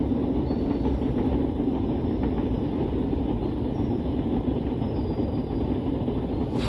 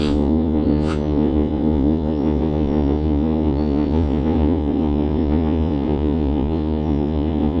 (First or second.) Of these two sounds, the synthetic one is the second